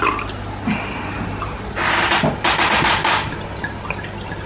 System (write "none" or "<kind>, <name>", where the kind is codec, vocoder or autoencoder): none